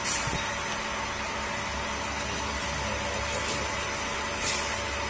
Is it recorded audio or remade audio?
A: recorded